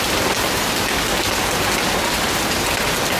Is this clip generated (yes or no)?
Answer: no